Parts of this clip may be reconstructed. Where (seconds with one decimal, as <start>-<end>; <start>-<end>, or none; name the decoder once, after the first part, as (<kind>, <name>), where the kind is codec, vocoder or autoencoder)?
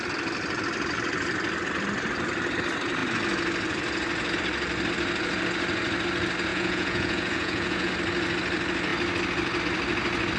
6.5-7.9 (vocoder, Vocos)